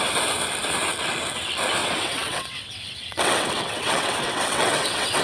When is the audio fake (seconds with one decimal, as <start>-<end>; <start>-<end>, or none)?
1.8-5.2